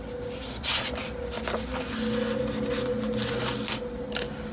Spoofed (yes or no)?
no